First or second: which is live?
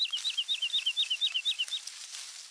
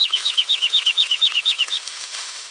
first